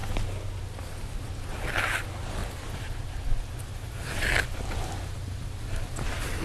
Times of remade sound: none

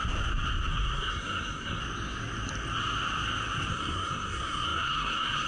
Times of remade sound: 0.7-1.8 (codec, SNAC); 3.7-5.5

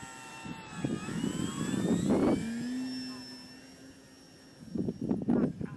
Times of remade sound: none